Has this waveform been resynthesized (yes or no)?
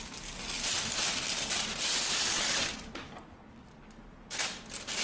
no